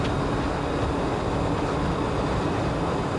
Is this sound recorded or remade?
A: recorded